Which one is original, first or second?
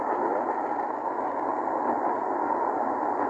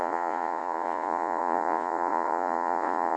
first